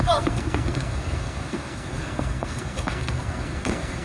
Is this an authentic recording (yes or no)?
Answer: no